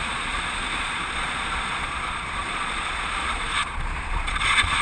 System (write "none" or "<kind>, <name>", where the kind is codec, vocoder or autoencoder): vocoder, Vocos